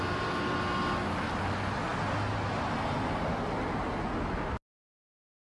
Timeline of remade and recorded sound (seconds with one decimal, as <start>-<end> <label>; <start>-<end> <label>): 0.0-5.4 recorded